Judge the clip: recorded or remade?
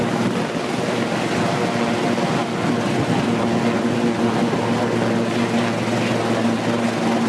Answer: recorded